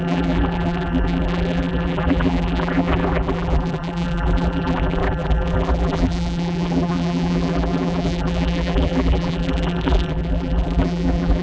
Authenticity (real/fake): fake